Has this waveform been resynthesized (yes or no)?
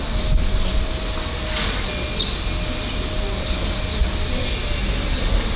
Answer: no